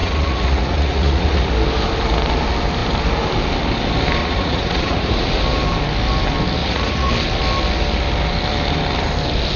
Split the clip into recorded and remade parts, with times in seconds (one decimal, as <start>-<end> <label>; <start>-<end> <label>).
0.0-1.5 remade; 1.5-4.2 recorded; 4.2-5.4 remade; 5.4-6.6 recorded; 6.6-7.1 remade; 7.1-9.6 recorded